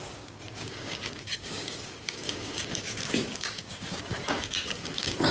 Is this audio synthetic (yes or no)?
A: yes